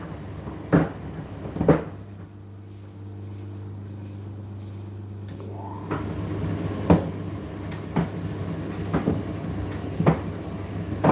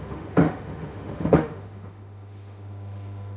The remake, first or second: second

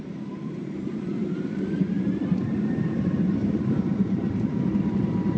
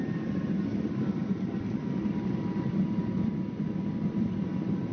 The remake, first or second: first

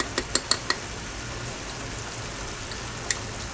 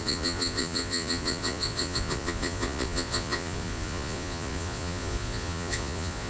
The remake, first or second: second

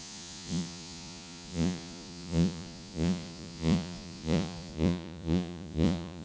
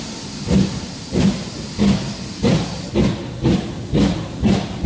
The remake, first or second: first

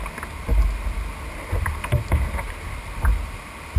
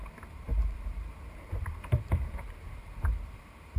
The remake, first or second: second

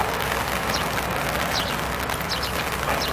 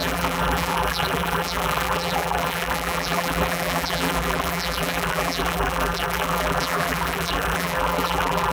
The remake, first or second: second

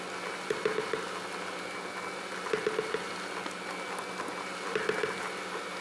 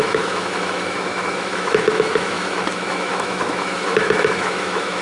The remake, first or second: second